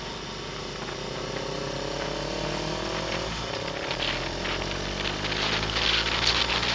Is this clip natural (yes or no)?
yes